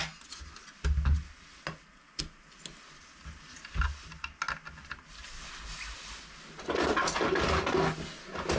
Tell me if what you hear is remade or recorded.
recorded